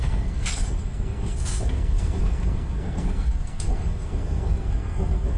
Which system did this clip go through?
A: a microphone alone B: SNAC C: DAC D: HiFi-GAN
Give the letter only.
B